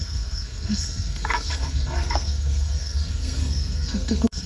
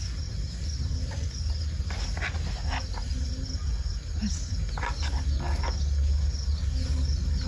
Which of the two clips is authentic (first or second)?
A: second